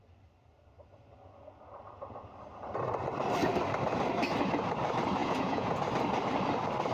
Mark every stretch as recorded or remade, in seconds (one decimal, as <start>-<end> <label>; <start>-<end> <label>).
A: 0.0-5.2 recorded; 5.2-5.8 remade; 5.8-6.9 recorded